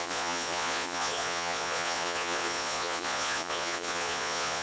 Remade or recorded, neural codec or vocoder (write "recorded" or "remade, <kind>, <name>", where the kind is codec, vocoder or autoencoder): remade, vocoder, Vocos